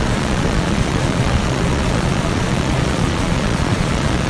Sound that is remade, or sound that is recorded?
remade